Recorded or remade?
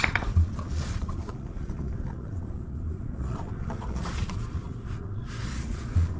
remade